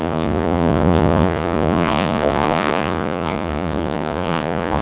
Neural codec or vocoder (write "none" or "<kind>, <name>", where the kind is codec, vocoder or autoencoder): vocoder, Vocos